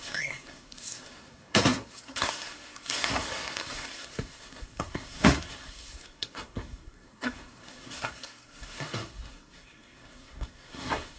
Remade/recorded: remade